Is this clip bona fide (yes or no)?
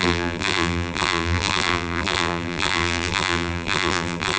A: no